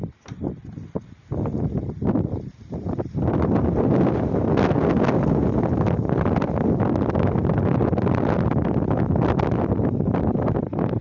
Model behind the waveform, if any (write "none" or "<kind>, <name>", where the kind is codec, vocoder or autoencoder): none